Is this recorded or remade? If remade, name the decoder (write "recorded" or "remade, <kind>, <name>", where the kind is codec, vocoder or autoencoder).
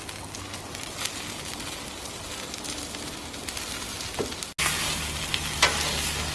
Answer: recorded